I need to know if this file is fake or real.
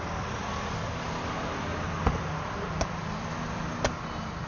real